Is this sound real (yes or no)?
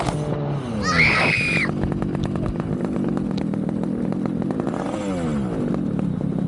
yes